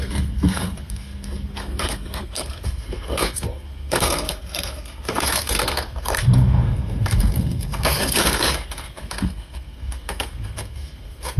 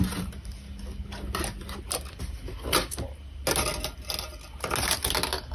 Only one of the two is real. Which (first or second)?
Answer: second